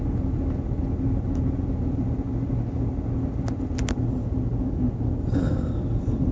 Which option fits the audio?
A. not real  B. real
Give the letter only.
B